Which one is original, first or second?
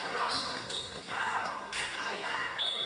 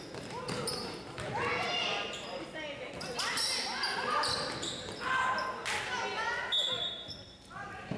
second